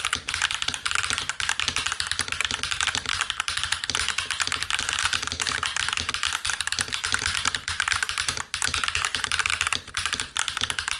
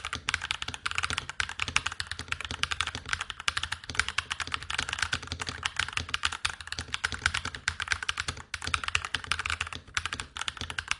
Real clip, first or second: second